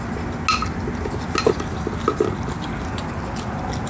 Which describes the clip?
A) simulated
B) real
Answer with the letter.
B